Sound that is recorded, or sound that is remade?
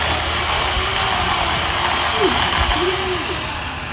recorded